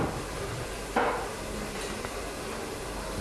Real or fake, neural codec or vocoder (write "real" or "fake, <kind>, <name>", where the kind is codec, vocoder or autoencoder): real